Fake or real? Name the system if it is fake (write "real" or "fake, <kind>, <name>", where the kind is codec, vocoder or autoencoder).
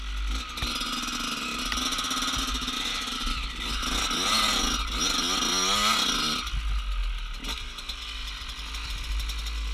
real